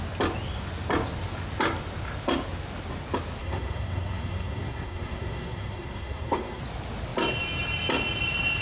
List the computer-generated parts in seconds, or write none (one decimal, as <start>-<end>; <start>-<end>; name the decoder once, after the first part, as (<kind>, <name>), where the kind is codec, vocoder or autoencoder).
3.4-6.6 (codec, SNAC)